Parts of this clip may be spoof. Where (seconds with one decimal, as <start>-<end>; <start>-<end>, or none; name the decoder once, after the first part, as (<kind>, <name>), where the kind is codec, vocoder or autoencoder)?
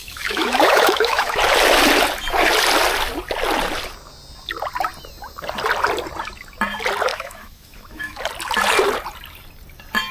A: 0.0-1.4 (autoencoder, DAC-VAE); 7.1-8.2